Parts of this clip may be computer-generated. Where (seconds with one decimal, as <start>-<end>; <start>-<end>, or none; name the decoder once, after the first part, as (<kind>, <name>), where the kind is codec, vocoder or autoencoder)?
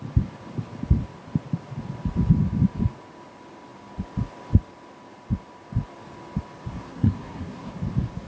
6.7-7.7 (codec, SNAC)